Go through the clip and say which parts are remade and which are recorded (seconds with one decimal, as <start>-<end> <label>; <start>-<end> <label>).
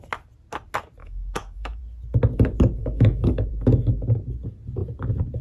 0.0-1.0 recorded; 1.0-1.8 remade; 1.8-2.8 recorded; 2.8-3.5 remade; 3.5-5.4 recorded